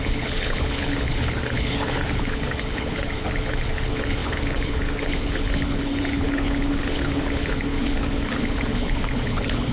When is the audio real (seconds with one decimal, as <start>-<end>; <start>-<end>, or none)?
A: none